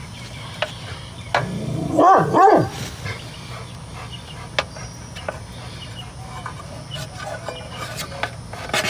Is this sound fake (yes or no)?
no